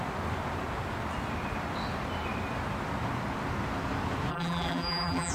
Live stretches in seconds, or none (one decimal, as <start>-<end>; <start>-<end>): 0.0-4.3